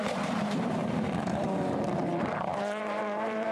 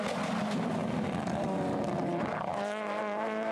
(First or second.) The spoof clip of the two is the first